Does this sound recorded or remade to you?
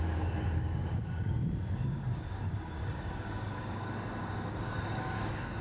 remade